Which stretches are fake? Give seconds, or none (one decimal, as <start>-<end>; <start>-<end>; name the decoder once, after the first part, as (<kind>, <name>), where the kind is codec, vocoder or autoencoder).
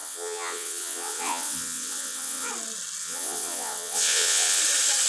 0.0-2.5 (vocoder, WaveNeXt); 3.0-4.6